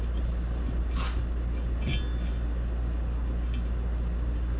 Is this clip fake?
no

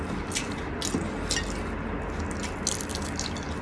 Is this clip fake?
no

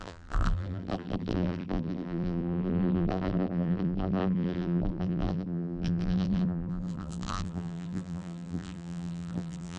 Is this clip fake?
yes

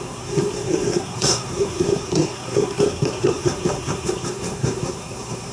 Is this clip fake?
yes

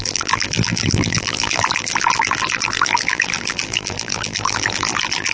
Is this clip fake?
yes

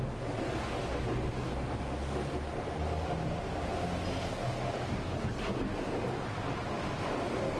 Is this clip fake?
no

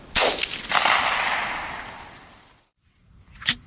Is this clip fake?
no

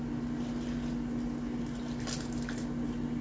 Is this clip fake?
no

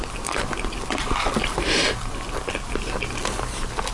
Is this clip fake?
no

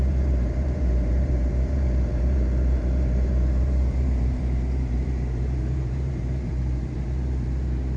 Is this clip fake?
yes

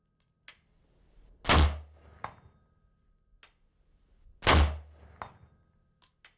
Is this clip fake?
no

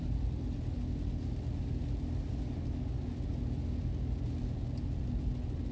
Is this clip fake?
no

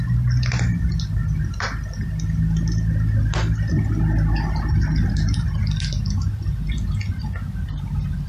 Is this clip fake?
no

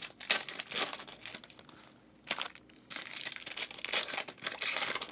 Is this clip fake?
no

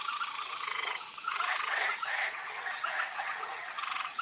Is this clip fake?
yes